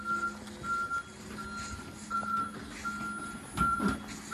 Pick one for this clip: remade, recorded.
recorded